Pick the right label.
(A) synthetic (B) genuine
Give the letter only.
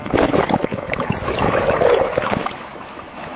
A